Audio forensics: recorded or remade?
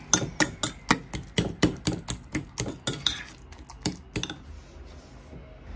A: recorded